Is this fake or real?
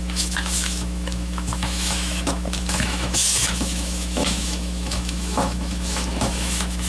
fake